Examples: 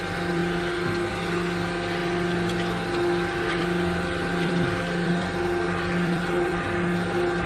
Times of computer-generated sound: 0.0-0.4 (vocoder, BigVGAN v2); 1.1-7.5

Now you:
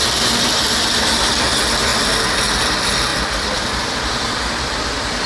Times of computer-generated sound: 0.0-1.9 (vocoder, BigVGAN v2); 2.6-5.3

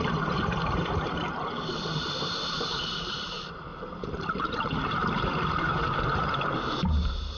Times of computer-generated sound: 0.0-7.4 (vocoder, BigVGAN v2)